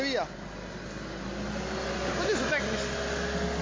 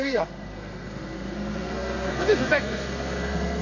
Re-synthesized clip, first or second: second